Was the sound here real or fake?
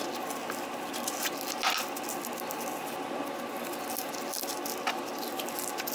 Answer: real